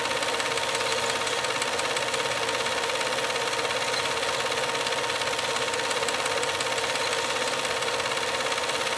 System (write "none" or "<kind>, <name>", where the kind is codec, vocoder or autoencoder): none